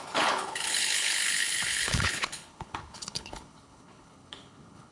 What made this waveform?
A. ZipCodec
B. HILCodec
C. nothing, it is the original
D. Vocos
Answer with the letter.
B